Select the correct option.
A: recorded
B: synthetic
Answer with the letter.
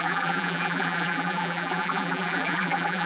B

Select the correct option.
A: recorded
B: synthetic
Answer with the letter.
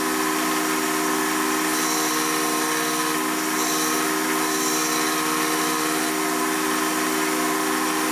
A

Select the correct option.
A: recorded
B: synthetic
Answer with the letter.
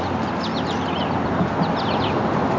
A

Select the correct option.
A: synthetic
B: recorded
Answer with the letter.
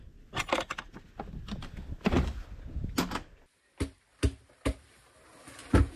B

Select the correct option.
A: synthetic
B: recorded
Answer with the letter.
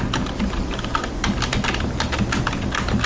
B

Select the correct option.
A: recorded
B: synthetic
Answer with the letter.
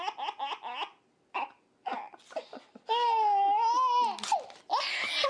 A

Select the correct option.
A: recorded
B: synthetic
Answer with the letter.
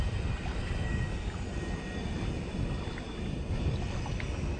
B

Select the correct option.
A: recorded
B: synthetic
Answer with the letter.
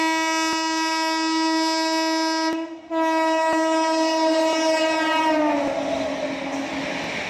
A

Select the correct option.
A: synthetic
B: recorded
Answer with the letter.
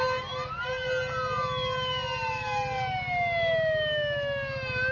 B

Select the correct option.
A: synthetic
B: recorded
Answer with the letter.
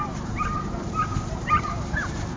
A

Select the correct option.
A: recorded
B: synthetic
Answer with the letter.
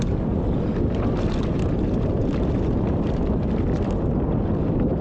A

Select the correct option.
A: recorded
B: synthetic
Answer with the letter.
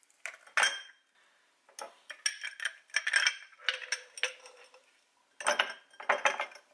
A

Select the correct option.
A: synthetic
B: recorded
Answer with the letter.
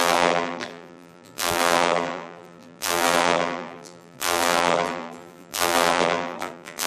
A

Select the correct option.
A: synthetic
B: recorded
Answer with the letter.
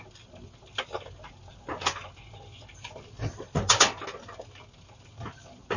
B